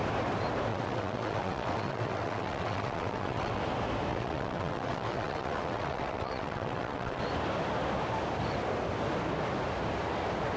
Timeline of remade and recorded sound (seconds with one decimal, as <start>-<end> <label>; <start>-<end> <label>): 0.0-0.7 recorded; 0.7-3.6 remade; 3.6-4.1 recorded; 4.1-7.2 remade; 7.2-10.6 recorded